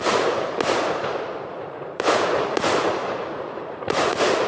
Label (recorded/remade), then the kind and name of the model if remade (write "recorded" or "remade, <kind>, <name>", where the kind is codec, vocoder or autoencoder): remade, vocoder, Vocos